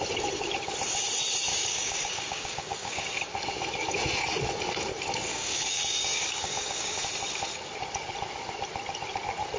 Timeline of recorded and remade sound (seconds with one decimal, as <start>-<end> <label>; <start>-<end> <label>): 0.0-1.5 recorded; 1.5-3.1 remade; 3.1-5.3 recorded; 5.3-7.1 remade; 7.1-9.6 recorded